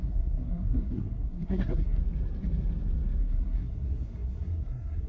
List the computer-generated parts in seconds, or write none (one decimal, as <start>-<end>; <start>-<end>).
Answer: 0.0-2.0; 3.2-5.1